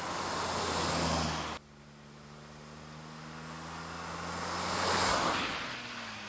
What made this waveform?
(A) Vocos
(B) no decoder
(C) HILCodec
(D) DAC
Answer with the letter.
B